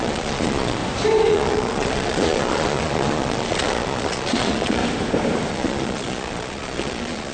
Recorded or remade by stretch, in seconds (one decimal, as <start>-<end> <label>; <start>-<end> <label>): 0.0-0.8 remade; 0.8-1.3 recorded; 1.3-4.8 remade; 4.8-5.5 recorded; 5.5-7.3 remade